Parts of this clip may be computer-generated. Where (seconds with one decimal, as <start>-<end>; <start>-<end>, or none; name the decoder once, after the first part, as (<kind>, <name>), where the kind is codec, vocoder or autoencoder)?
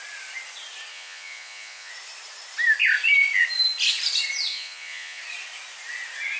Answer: 0.9-1.9 (vocoder, Vocos); 4.5-5.2